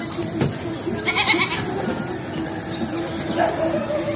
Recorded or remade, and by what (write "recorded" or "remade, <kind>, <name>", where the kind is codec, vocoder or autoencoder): recorded